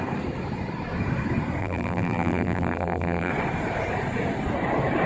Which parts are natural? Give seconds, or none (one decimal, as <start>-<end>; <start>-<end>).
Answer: 0.0-1.6; 3.3-5.1